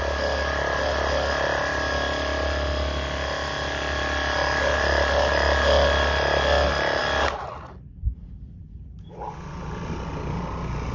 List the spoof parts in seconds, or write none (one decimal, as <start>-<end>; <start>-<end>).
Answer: none